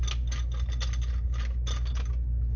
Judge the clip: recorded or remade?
recorded